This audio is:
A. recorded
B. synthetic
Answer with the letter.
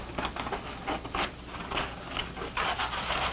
A